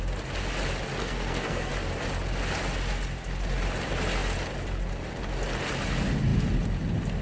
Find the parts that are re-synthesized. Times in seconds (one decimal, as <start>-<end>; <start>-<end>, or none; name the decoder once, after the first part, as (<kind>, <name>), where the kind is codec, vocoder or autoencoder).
1.0-1.7 (codec, SNAC)